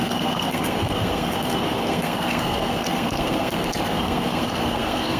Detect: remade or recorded remade